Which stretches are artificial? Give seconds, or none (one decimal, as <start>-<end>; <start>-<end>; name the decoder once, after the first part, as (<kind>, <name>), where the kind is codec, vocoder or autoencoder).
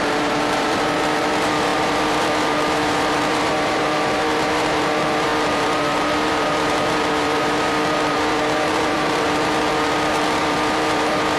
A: 0.0-11.4 (vocoder, BigVGAN v2)